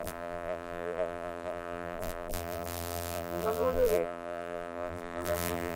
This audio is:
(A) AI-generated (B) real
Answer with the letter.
A